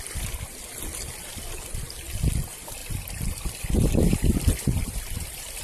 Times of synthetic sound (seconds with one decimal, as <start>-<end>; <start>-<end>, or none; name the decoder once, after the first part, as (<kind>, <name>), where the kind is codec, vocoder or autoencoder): 2.8-5.0 (vocoder, BigVGAN v2)